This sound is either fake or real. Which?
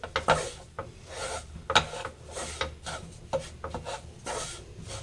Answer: real